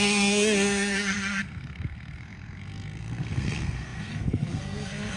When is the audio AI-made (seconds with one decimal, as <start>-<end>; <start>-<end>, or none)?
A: 0.0-5.2

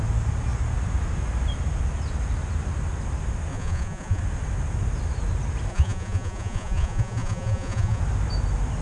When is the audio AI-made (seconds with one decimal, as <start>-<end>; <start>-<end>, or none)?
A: 3.5-4.2; 5.7-8.0

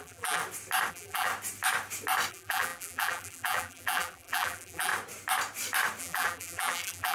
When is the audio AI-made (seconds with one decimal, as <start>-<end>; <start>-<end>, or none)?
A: 0.0-0.4; 0.9-1.3; 2.3-4.9; 6.0-7.1

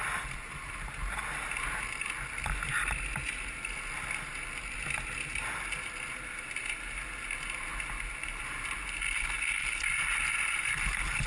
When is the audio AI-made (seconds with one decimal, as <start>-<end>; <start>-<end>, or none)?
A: none

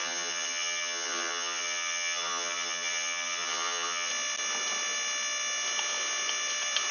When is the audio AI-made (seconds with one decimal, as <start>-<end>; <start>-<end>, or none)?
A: 0.0-4.1

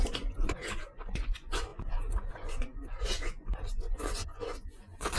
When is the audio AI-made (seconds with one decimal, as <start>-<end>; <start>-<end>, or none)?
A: 0.0-5.2

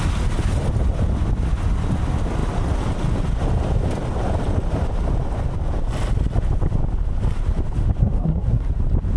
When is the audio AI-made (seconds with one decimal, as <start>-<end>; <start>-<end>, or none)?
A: 8.0-8.7